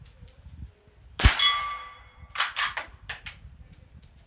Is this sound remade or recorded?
remade